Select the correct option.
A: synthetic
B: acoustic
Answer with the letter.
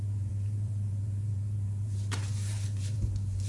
A